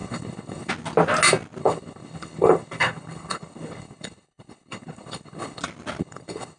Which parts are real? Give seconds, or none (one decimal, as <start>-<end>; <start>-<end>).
0.7-1.6; 5.6-6.0